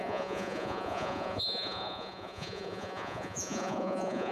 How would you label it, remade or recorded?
remade